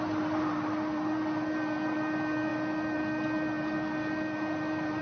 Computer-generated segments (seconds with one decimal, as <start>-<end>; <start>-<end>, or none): none